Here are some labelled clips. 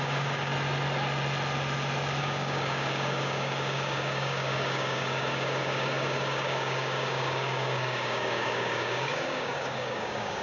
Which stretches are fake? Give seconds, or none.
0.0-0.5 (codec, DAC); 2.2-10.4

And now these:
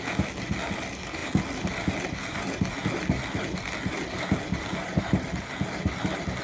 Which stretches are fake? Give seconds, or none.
none